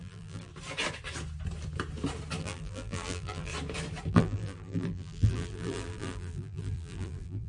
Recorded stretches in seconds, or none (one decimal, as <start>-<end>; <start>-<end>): 0.5-2.4; 3.5-4.1